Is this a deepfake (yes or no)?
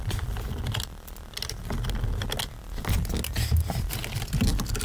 no